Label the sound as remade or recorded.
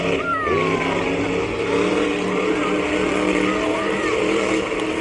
recorded